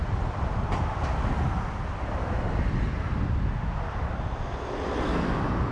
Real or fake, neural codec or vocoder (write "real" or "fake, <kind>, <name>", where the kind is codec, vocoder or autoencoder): real